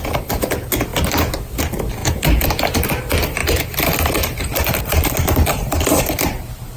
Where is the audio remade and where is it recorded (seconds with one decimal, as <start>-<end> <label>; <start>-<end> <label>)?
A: 0.0-6.8 remade